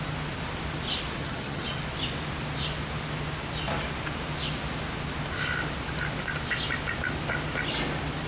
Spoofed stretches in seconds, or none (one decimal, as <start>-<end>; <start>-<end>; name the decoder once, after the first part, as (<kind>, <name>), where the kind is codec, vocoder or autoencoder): 1.2-1.8 (vocoder, HiFi-GAN)